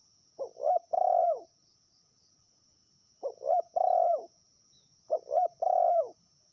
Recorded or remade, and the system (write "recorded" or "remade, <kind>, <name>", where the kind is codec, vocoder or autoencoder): remade, vocoder, Vocos